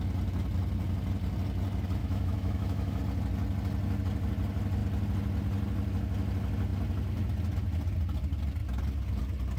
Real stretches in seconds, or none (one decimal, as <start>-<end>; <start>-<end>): 0.0-2.0; 3.0-9.6

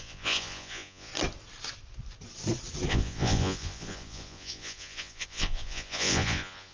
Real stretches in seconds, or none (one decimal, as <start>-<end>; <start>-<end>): 1.1-2.9

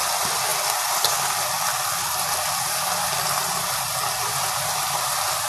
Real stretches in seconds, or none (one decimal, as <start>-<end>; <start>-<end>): 0.0-5.5

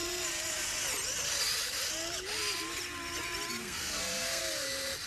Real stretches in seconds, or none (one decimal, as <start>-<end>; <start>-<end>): 0.0-3.6; 4.4-5.1

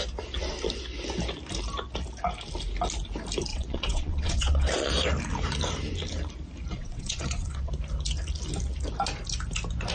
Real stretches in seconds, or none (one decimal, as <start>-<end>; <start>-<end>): 0.0-3.5; 4.9-6.8; 7.7-9.9